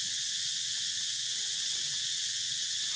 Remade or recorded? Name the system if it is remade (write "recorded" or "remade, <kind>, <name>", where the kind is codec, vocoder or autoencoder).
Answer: remade, vocoder, WaveNeXt